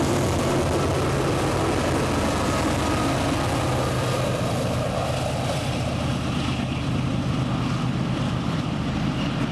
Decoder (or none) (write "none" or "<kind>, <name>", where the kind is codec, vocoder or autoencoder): none